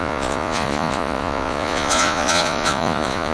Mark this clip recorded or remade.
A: remade